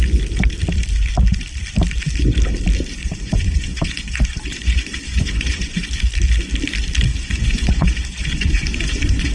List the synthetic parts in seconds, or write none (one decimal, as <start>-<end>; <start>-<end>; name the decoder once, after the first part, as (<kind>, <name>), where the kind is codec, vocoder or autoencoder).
3.0-5.9 (vocoder, Vocos); 7.1-9.3